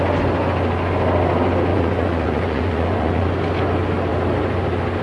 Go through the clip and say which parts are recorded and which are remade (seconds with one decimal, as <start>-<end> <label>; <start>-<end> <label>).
0.0-1.7 recorded; 1.7-3.3 remade; 3.3-5.0 recorded